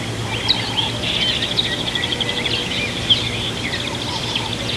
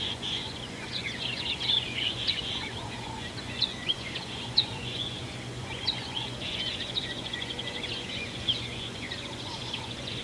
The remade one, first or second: second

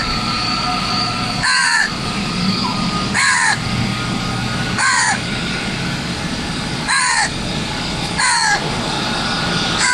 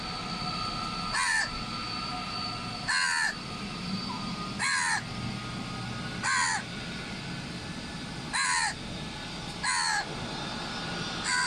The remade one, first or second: first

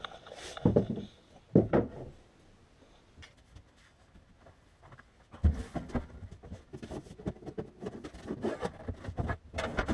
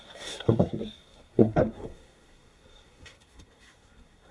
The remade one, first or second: second